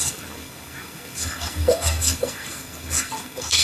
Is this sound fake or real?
fake